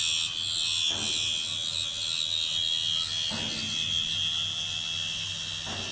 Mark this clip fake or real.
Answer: real